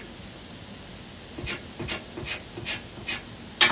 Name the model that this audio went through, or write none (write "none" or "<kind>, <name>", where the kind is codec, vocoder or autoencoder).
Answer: none